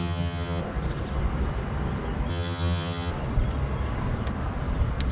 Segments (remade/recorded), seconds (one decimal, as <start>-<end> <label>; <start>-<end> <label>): 0.0-0.6 remade; 0.6-2.3 recorded; 2.3-3.1 remade; 3.1-5.1 recorded